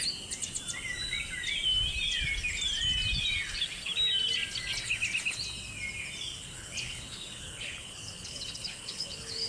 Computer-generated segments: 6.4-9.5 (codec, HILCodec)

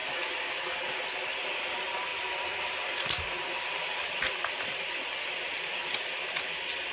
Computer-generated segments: 2.1-5.9 (vocoder, BigVGAN v2)

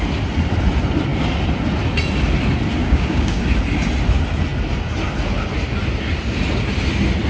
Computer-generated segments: 2.8-3.4 (codec, DAC)

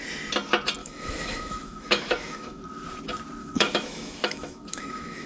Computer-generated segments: 0.8-2.6 (autoencoder, DAC-VAE); 3.4-5.3

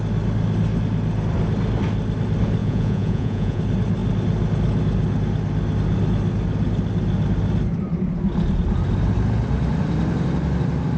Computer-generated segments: 2.6-3.6 (vocoder, Vocos)

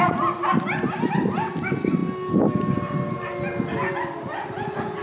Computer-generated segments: none

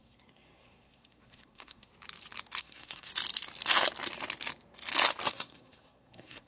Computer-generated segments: 0.0-1.9 (codec, SNAC); 2.6-3.1; 5.3-6.5

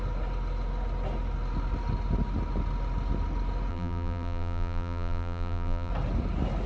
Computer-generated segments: 3.7-5.9 (vocoder, BigVGAN v2)